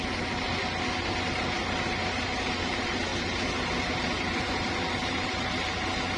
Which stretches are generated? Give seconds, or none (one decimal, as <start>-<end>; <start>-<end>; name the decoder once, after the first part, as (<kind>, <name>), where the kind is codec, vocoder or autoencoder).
none